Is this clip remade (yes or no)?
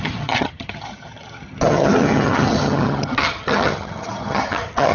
yes